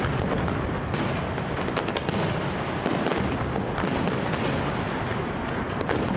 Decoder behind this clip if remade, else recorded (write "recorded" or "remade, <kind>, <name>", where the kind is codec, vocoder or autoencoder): recorded